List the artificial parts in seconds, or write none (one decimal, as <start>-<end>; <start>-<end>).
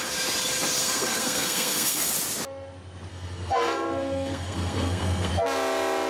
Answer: 0.8-2.1; 3.1-5.3